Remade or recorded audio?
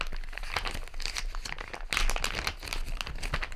recorded